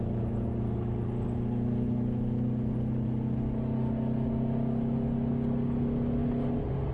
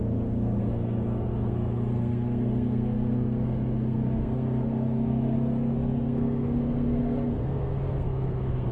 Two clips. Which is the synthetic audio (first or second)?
second